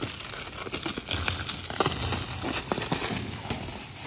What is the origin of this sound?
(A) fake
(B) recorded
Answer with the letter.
B